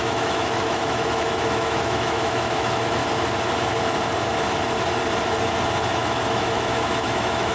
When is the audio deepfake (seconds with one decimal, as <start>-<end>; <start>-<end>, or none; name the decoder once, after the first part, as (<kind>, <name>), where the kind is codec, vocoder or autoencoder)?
0.0-3.0 (autoencoder, DAC-VAE); 5.9-7.5